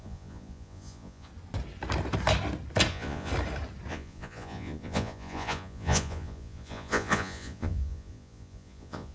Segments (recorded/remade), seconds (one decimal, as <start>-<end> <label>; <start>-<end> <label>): 0.0-1.3 remade; 1.3-2.9 recorded; 2.9-3.3 remade; 3.3-3.9 recorded; 3.9-9.1 remade